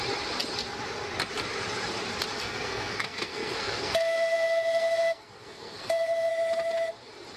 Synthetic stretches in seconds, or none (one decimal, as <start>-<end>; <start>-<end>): 2.4-6.3